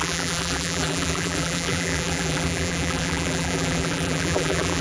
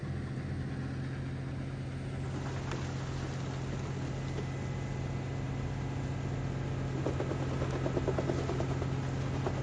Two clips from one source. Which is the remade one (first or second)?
first